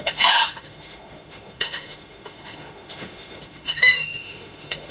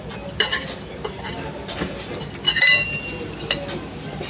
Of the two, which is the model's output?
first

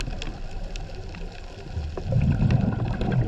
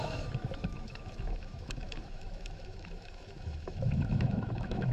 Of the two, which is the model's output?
second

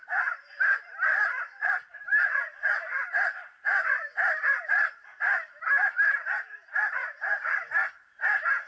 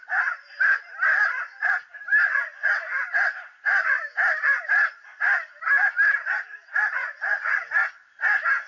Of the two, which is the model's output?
first